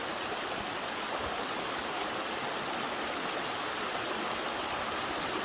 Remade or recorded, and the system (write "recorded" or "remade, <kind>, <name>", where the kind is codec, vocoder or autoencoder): recorded